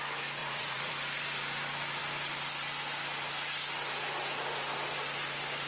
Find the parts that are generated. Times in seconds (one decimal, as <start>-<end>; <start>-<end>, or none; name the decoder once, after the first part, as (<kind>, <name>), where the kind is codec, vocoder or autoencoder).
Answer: 0.4-0.9 (vocoder, Vocos)